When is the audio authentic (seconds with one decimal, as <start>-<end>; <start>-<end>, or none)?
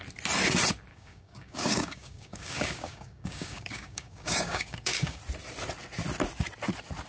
0.0-0.9; 5.2-7.1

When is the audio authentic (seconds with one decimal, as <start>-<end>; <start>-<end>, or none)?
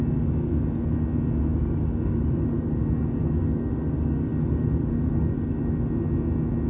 0.5-1.5; 2.7-3.2; 5.6-6.7